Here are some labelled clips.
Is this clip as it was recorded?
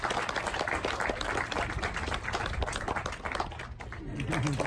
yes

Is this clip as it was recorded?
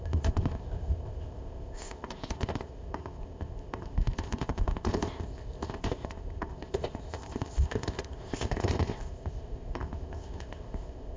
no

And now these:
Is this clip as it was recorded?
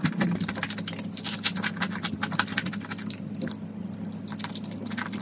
yes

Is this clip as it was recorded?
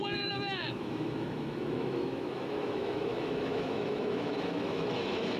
no